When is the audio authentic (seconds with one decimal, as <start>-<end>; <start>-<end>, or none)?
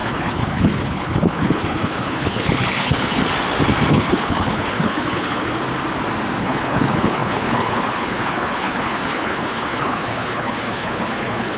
3.2-3.9; 5.5-6.4